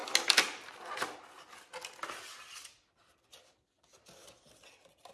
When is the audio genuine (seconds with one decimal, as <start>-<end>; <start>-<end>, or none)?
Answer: 0.0-5.1